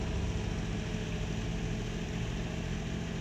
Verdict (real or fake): real